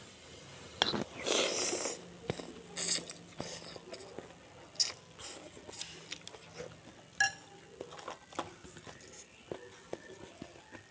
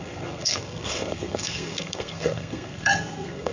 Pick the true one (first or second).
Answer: first